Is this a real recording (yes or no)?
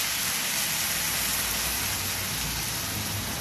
yes